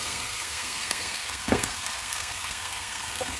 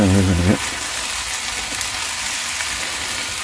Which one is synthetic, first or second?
first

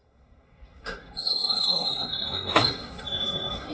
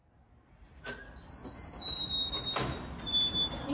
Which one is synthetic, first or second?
first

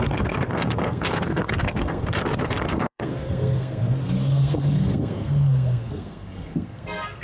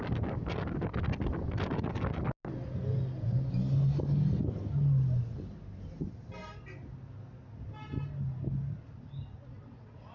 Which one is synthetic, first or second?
first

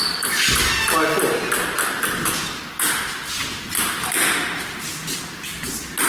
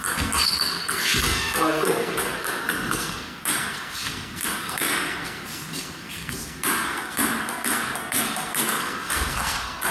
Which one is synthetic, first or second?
second